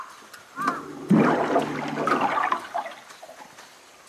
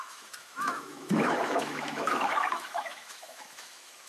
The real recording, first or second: first